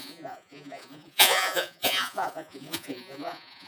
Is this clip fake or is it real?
fake